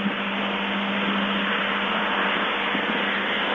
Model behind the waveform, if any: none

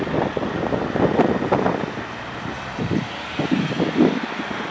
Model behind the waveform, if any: none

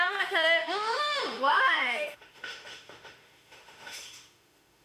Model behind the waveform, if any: autoencoder, DAC-VAE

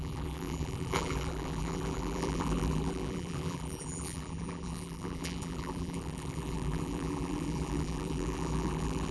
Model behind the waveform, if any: vocoder, BigVGAN v2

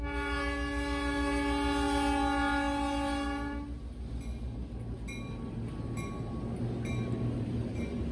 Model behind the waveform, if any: none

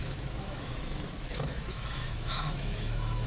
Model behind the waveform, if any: autoencoder, DAC-VAE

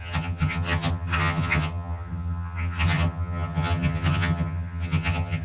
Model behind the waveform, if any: vocoder, HiFi-GAN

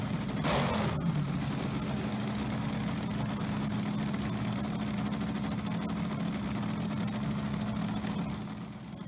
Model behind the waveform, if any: none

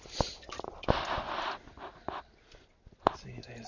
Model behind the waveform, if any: none